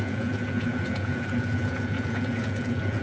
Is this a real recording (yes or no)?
no